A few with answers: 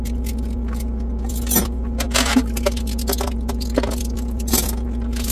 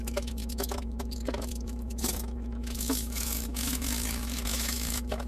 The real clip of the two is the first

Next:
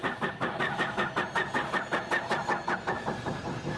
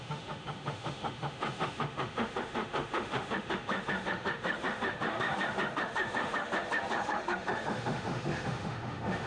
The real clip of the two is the first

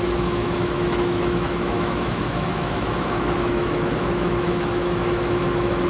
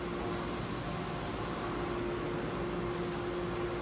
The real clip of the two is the second